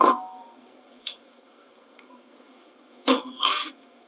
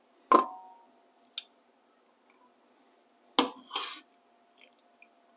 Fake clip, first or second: first